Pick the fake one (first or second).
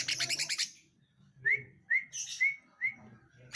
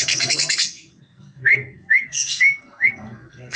second